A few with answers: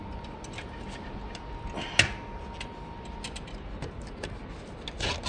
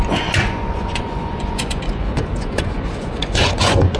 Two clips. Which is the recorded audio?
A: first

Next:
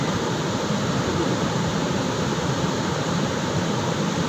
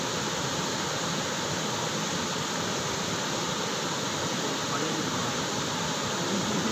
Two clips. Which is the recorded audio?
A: second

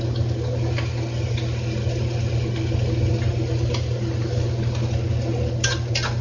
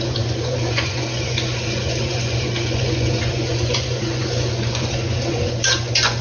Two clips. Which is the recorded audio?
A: first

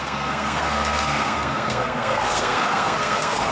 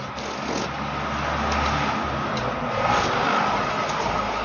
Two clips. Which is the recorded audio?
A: second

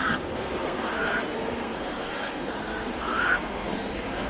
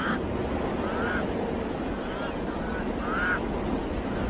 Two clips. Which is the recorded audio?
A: second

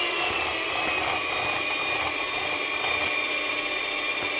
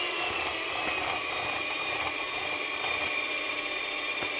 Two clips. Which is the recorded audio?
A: first